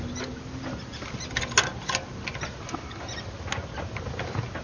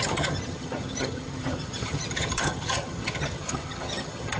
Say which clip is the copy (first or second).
second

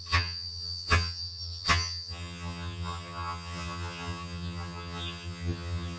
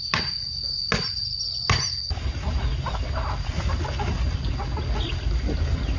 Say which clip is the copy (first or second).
first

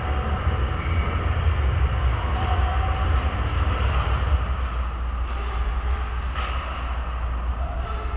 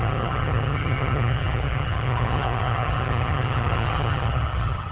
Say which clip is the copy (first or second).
second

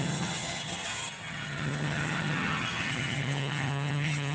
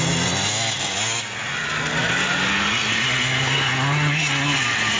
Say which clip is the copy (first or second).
first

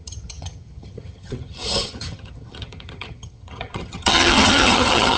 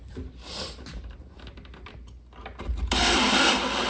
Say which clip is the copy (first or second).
first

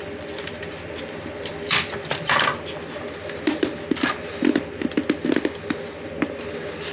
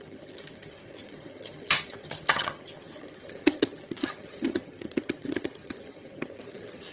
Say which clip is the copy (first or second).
second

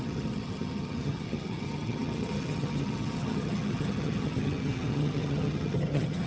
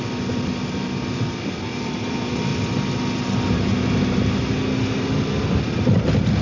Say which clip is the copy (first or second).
first